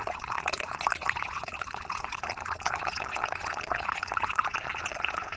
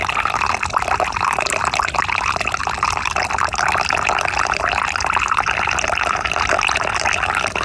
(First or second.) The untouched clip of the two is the second